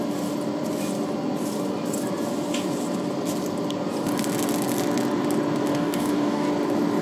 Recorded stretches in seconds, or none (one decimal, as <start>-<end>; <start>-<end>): 0.0-5.7; 6.5-7.0